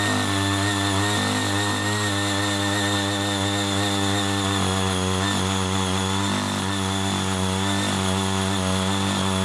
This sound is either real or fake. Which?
real